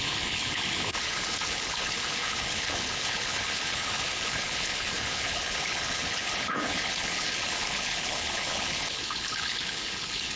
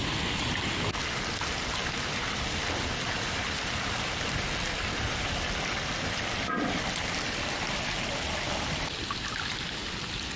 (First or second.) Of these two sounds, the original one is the second